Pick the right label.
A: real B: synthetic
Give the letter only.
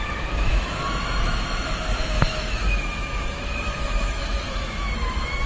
B